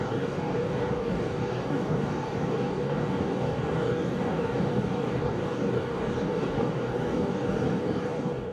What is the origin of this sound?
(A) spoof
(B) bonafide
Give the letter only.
A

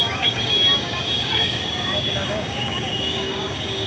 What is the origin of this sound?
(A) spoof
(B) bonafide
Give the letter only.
A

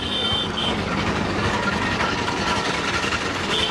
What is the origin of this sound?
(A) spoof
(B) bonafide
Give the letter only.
A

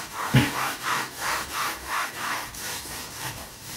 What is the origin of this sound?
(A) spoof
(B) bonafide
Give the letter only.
A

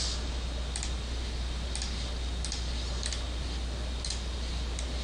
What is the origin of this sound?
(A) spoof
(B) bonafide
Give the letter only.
B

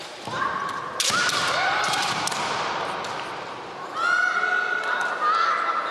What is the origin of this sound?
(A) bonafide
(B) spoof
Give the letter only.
A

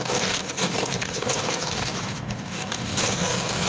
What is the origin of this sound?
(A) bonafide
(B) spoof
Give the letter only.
B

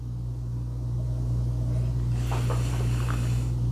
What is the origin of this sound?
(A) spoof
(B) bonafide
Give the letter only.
B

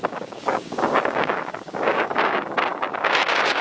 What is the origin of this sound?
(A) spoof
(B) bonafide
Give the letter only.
A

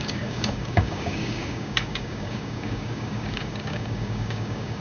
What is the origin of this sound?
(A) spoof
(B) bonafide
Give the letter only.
A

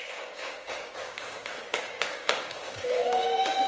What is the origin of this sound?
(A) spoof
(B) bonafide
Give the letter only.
A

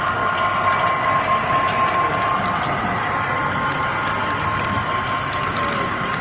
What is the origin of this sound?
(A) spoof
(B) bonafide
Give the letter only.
B